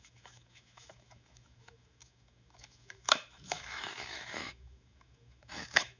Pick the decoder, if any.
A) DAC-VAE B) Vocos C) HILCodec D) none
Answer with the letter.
A